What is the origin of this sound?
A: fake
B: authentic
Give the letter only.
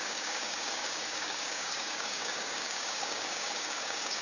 A